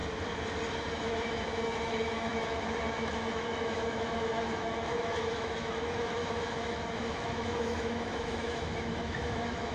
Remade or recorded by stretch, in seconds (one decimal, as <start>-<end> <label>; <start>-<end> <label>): 0.0-0.9 recorded; 0.9-9.7 remade